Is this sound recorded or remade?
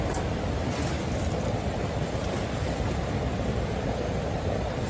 remade